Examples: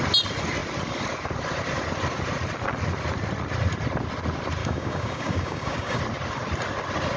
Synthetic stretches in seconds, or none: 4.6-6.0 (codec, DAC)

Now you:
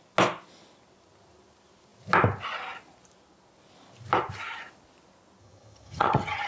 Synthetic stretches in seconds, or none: 5.4-6.5 (vocoder, HiFi-GAN)

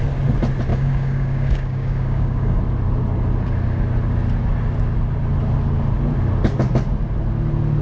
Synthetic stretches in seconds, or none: 0.7-2.6 (codec, DAC)

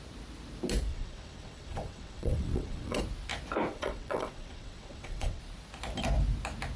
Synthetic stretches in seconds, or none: 0.9-3.0 (vocoder, WaveNeXt); 3.7-5.4

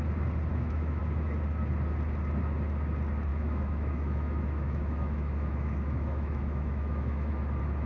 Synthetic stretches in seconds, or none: 0.5-1.0 (autoencoder, DAC-VAE); 3.3-7.3

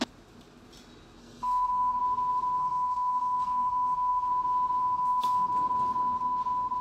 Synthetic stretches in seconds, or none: 1.2-2.0 (codec, SNAC); 2.6-4.3; 4.8-5.5

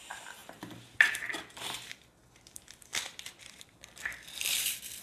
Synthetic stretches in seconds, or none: 0.0-5.0 (vocoder, BigVGAN v2)

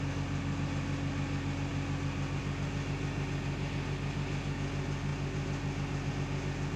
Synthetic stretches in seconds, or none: none